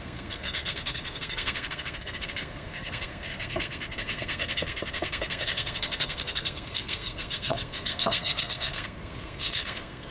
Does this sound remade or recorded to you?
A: remade